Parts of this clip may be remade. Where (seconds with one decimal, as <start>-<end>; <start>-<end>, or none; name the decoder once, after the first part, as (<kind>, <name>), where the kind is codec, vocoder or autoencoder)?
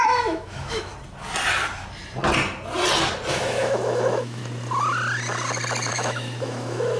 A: 0.0-0.9 (autoencoder, DAC-VAE); 3.3-4.4; 5.9-7.0